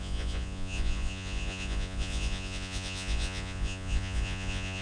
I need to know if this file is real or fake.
fake